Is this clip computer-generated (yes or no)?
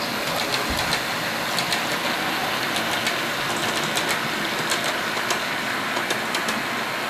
no